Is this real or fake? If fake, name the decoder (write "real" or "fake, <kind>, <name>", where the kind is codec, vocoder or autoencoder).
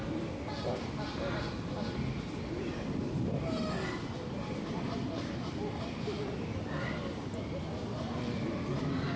real